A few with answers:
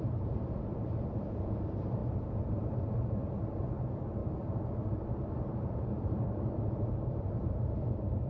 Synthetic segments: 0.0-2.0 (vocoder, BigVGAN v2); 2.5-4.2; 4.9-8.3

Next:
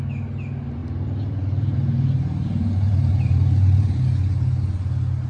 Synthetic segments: 0.8-4.0 (vocoder, BigVGAN v2)

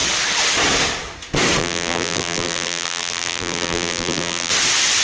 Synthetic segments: 1.6-4.5 (vocoder, BigVGAN v2)

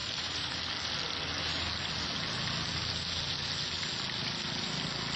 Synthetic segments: 0.0-0.7 (vocoder, BigVGAN v2)

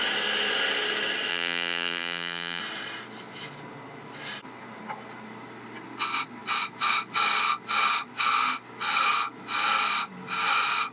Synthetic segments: 1.3-2.6 (vocoder, BigVGAN v2)

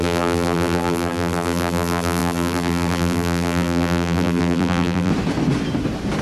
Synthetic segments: 0.0-5.1 (vocoder, BigVGAN v2)

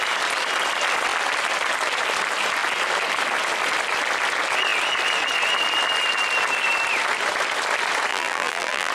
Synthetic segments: 8.1-8.9 (vocoder, BigVGAN v2)